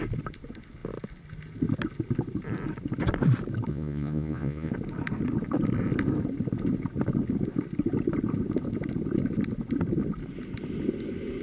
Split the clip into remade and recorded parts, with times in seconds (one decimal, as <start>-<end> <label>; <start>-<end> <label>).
0.0-3.7 recorded; 3.7-4.7 remade; 4.7-11.4 recorded